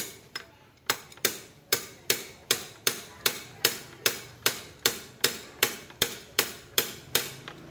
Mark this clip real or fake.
fake